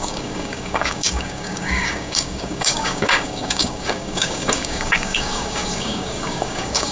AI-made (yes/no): yes